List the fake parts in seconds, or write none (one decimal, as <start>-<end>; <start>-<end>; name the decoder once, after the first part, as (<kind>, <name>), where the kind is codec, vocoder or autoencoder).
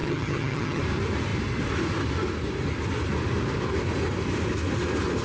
0.0-0.8 (vocoder, HiFi-GAN)